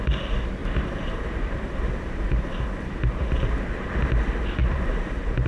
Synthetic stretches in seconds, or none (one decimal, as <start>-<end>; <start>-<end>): 0.6-3.9; 4.6-5.5